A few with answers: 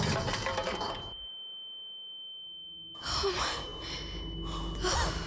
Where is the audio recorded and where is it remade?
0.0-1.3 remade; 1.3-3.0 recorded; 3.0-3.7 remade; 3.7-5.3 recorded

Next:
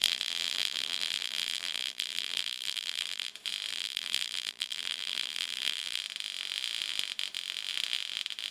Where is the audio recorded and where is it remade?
0.0-3.3 remade; 3.3-3.7 recorded; 3.7-6.0 remade; 6.0-8.5 recorded

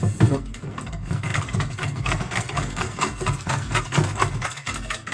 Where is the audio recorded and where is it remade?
0.0-5.1 remade

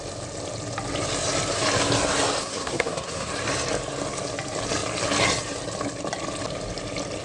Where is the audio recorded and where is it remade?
0.0-2.4 recorded; 2.4-3.3 remade; 3.3-7.2 recorded

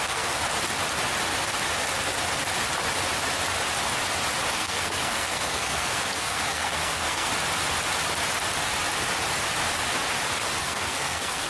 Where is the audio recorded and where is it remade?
0.0-0.4 remade; 0.4-4.5 recorded; 4.5-7.3 remade; 7.3-10.6 recorded; 10.6-11.5 remade